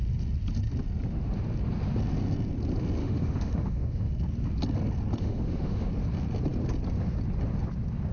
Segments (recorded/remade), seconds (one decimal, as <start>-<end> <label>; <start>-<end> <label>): 0.0-3.0 recorded; 3.0-4.1 remade; 4.1-5.2 recorded; 5.2-5.9 remade; 5.9-8.1 recorded